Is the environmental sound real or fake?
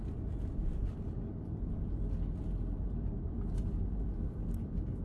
fake